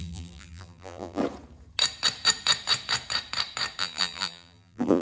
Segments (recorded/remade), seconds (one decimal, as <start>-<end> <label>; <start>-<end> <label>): 0.0-1.2 remade; 1.2-3.8 recorded; 3.8-5.0 remade